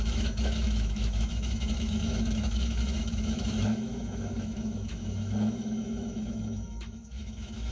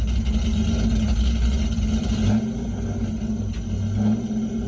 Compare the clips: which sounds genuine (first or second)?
second